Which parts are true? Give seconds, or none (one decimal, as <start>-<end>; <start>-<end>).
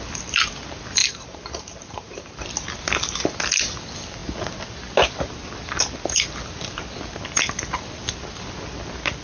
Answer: 0.0-1.0; 2.4-9.2